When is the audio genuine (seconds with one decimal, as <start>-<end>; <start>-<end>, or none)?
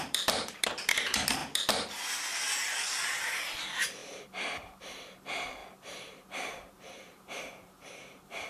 1.4-3.2